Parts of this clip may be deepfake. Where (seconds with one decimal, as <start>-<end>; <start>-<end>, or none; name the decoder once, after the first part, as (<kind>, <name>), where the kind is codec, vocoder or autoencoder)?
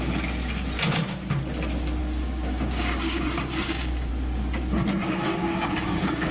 2.0-4.1 (codec, DAC); 5.0-6.3